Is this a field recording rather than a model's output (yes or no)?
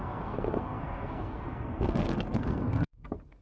no